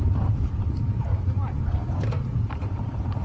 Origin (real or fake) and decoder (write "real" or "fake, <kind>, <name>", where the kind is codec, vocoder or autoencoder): fake, vocoder, BigVGAN v2